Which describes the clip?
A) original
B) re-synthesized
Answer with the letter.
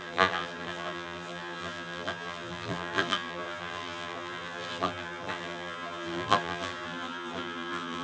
B